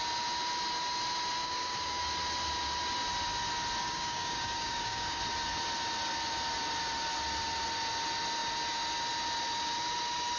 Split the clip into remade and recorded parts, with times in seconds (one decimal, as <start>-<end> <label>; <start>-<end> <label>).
0.0-1.4 recorded; 1.4-2.0 remade; 2.0-3.8 recorded; 3.8-5.2 remade; 5.2-10.4 recorded